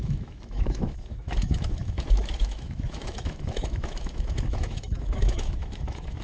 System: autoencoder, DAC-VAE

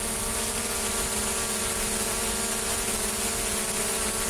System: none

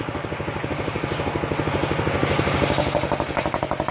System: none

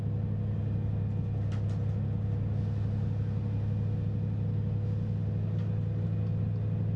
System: none